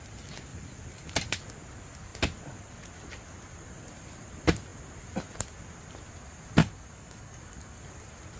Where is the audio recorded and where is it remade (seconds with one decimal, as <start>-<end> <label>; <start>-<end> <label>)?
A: 0.0-6.6 recorded; 6.6-7.8 remade; 7.8-8.4 recorded